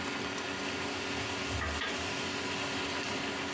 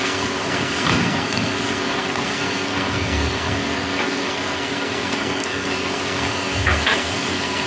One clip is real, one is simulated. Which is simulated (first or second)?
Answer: second